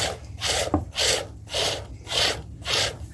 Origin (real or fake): fake